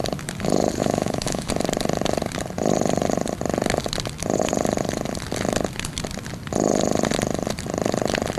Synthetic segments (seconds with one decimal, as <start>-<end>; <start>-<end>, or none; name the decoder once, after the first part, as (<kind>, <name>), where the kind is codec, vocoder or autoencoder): 0.8-1.5 (autoencoder, DAC-VAE)